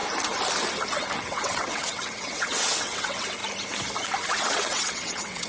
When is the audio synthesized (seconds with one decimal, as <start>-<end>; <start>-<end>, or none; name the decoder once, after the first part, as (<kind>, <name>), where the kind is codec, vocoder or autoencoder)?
1.2-3.4 (vocoder, WaveNeXt); 4.3-5.5